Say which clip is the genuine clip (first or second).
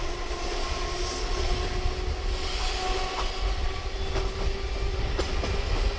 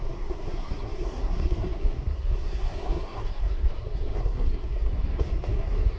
first